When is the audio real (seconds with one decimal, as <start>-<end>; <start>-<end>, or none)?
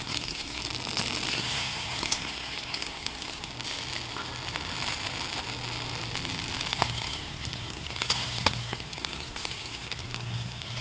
0.6-1.3; 3.5-6.7